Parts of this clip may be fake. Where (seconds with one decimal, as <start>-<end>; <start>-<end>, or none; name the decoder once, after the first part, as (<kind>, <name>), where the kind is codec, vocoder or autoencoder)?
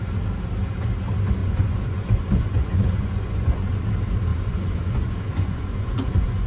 1.4-3.7 (vocoder, Vocos); 4.3-6.5